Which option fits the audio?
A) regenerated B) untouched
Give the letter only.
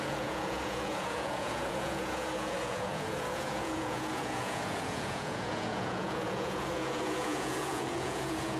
A